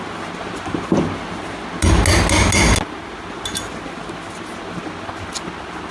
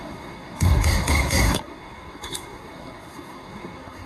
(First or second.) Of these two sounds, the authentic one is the first